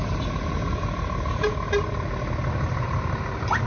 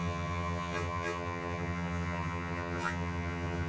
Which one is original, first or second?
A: first